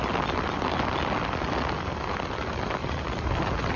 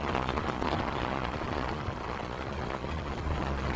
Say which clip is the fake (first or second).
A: second